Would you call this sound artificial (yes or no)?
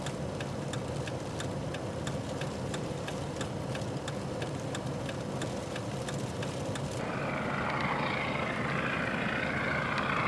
no